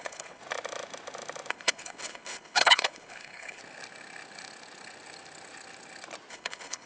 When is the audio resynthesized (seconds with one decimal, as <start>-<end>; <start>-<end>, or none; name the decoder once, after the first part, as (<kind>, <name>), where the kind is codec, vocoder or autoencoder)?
0.0-0.4 (codec, HILCodec); 1.5-3.6; 6.3-6.9